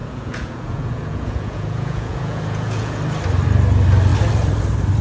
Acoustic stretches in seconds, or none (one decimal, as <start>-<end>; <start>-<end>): 3.0-5.0

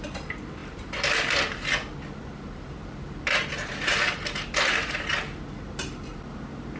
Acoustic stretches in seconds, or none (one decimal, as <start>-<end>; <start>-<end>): 0.0-6.8

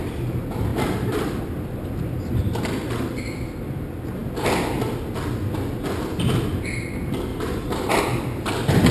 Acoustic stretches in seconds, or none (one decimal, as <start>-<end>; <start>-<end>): 0.0-0.7; 1.4-7.3; 8.0-8.9

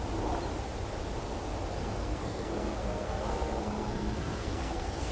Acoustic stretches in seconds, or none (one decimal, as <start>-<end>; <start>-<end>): 0.0-1.8

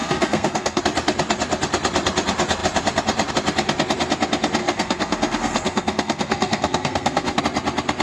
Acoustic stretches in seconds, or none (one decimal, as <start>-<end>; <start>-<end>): 0.8-4.6; 7.4-8.0